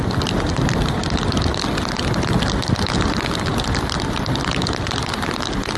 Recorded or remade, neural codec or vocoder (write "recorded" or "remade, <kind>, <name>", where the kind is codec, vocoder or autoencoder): recorded